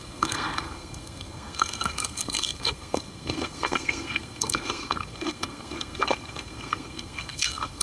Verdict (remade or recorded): remade